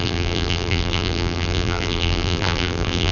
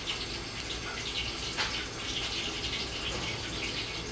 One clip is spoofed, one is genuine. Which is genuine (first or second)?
second